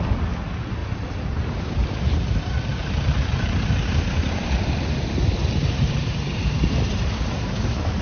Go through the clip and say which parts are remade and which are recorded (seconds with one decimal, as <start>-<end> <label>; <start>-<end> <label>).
0.0-8.0 remade